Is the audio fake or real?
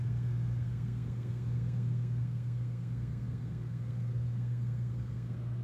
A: fake